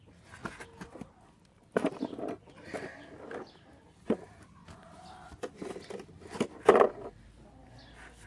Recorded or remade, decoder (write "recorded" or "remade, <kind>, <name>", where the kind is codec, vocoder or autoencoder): recorded